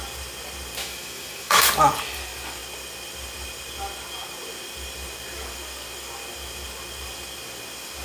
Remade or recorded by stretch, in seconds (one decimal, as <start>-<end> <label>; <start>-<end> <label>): 0.0-0.8 recorded; 0.8-1.7 remade; 1.7-8.0 recorded